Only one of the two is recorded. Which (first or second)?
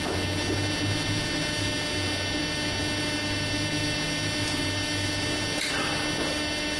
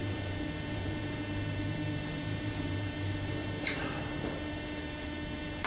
first